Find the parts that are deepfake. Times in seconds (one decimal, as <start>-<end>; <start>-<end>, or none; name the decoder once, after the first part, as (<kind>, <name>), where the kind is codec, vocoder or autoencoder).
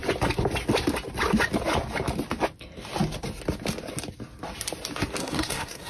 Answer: 5.2-5.9 (codec, SNAC)